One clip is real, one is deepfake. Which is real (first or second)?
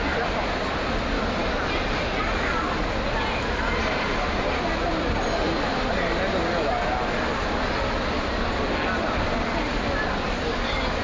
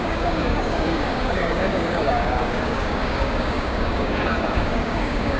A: first